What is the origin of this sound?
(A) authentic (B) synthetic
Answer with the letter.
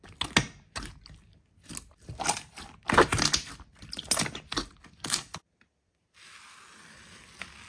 A